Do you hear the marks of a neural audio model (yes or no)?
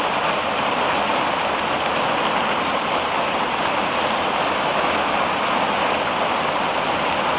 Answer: no